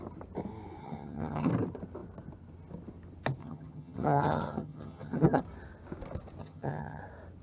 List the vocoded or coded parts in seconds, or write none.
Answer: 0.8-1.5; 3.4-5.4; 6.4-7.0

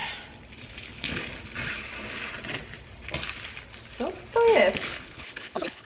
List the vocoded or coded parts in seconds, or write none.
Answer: 0.7-1.2; 4.7-5.8